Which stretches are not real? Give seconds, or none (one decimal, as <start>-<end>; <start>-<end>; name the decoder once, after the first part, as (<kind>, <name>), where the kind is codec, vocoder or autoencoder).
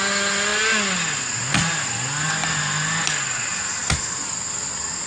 none